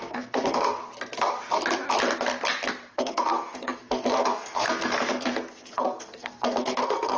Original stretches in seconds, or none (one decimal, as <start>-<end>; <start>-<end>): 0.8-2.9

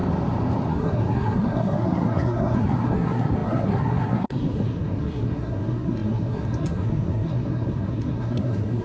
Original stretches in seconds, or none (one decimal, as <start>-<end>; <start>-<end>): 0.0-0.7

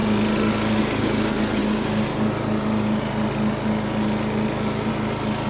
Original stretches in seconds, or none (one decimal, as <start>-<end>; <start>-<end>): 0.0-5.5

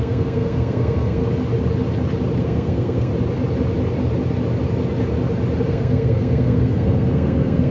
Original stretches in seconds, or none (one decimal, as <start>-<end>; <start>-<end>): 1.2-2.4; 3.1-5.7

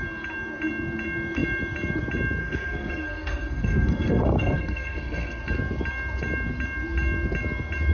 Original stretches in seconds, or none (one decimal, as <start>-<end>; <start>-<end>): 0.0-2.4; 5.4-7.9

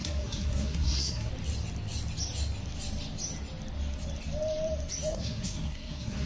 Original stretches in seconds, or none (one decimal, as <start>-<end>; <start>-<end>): 1.3-5.1

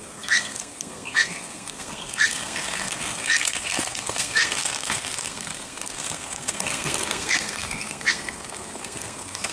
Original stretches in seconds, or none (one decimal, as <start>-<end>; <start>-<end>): none

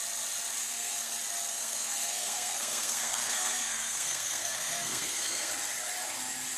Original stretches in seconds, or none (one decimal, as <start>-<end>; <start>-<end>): 0.0-0.6; 1.1-1.5; 5.5-6.6